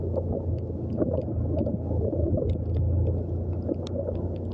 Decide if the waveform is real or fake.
real